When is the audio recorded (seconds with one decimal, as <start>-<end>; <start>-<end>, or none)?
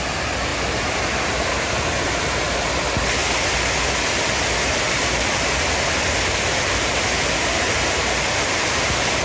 0.0-9.2